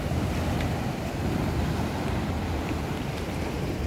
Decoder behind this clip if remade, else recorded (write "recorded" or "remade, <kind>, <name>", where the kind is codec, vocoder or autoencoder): remade, vocoder, BigVGAN v2